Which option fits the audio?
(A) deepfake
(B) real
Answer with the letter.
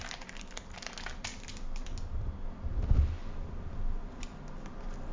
B